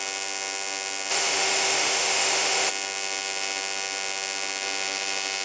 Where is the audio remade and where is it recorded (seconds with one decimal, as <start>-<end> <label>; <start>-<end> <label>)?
0.0-1.1 recorded; 1.1-2.7 remade; 2.7-5.4 recorded